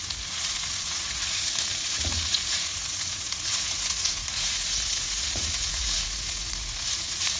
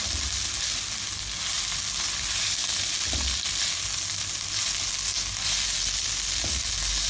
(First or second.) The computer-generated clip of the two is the first